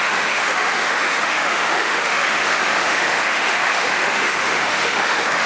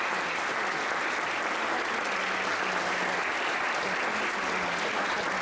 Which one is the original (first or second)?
second